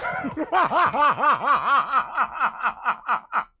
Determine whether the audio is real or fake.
real